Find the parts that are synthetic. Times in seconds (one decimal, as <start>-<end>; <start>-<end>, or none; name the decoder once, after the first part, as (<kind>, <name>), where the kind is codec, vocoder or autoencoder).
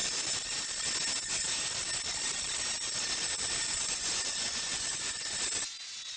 3.6-5.4 (vocoder, Vocos)